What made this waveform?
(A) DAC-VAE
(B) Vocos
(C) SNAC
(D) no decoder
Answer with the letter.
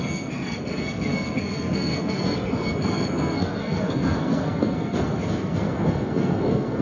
C